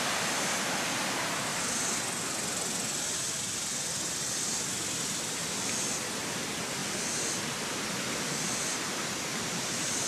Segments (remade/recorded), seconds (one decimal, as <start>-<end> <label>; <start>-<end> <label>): 0.0-1.5 recorded; 1.5-2.0 remade; 2.0-10.1 recorded